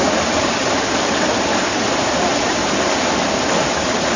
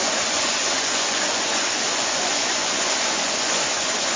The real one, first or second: first